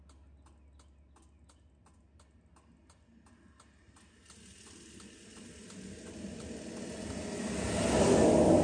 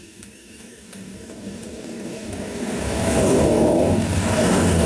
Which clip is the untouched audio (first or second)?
first